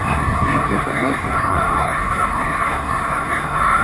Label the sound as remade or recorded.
remade